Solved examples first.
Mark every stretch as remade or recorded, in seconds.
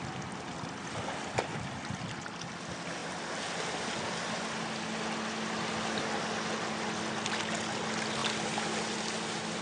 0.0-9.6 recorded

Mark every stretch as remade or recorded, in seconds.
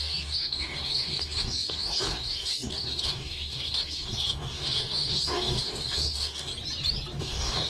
0.0-6.5 remade; 6.5-7.2 recorded; 7.2-7.7 remade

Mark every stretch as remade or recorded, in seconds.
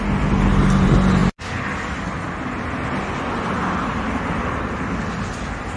0.0-5.8 recorded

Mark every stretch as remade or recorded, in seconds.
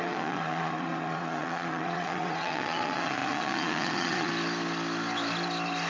0.0-4.3 remade; 4.3-5.9 recorded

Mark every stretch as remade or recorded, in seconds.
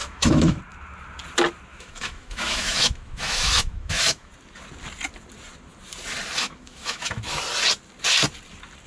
0.0-0.6 remade; 0.6-1.7 recorded; 1.7-4.3 remade; 4.3-6.4 recorded; 6.4-7.4 remade; 7.4-8.9 recorded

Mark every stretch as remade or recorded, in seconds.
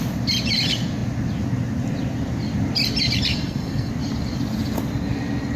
0.0-3.3 recorded; 3.3-3.9 remade; 3.9-5.6 recorded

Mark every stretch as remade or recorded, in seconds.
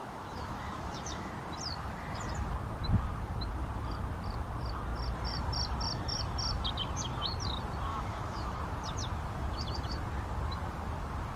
0.0-1.3 remade; 1.3-7.9 recorded; 7.9-8.6 remade; 8.6-11.4 recorded